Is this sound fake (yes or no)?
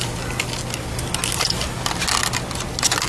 no